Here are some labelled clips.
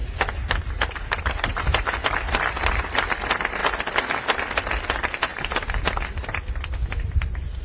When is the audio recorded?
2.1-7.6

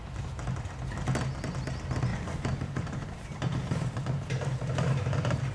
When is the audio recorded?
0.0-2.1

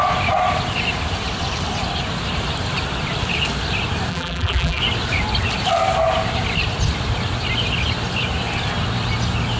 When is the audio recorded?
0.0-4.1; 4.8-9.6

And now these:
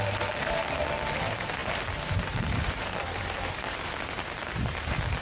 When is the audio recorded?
0.6-1.1

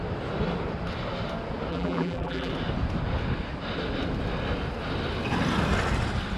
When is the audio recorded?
0.0-1.7; 2.5-6.4